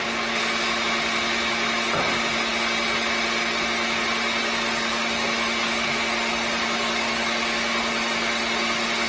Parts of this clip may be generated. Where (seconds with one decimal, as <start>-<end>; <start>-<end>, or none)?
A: none